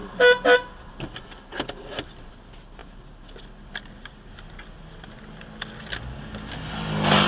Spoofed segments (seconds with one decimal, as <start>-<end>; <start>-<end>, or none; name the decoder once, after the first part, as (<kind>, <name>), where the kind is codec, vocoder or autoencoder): none